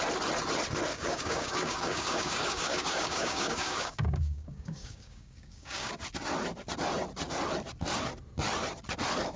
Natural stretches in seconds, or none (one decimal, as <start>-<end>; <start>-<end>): 0.0-0.9; 5.9-9.4